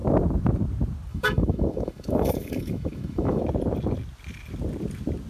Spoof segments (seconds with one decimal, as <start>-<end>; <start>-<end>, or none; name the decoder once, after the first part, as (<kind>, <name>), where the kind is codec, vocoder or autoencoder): 1.1-3.4 (autoencoder, DAC-VAE)